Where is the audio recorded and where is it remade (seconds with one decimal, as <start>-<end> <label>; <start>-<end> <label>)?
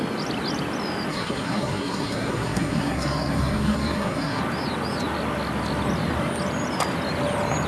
0.0-1.1 recorded; 1.1-4.4 remade; 4.4-7.7 recorded